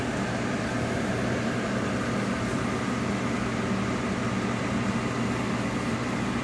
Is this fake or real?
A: real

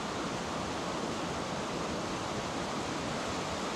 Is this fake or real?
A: real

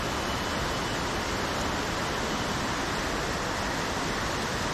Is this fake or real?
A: real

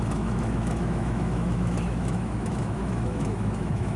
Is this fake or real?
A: fake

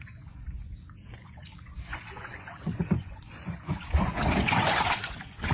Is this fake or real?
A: fake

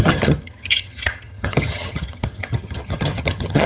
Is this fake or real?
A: fake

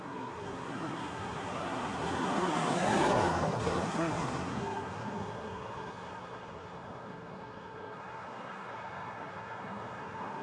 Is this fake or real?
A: fake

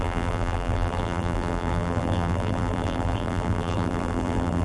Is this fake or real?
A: fake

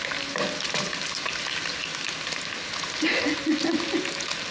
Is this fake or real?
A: real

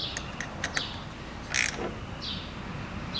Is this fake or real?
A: real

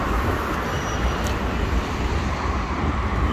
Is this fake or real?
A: real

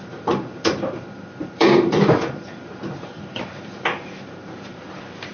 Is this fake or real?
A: fake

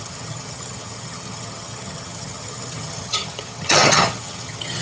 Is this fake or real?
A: fake